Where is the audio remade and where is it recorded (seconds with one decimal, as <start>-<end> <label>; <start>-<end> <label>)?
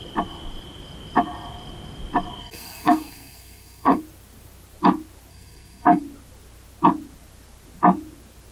0.0-2.4 recorded; 2.4-4.0 remade; 4.0-5.3 recorded; 5.3-6.0 remade; 6.0-8.5 recorded